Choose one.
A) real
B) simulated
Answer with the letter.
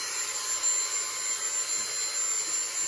A